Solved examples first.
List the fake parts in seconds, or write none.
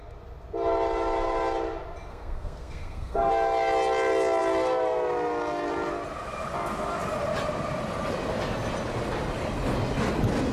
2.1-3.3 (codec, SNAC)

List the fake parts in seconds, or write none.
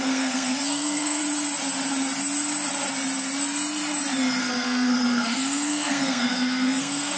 0.0-1.2 (codec, SNAC); 4.4-7.2